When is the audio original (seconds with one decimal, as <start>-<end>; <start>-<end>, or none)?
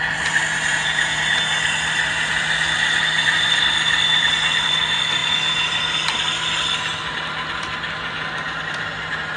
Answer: 0.0-0.7; 1.2-9.4